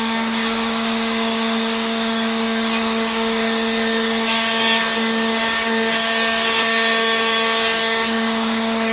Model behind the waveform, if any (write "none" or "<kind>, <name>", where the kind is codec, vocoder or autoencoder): codec, DAC